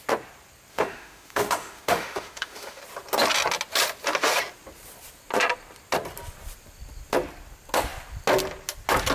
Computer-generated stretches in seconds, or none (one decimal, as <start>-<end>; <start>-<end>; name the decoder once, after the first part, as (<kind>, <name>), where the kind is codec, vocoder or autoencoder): 0.7-2.8 (autoencoder, DAC-VAE)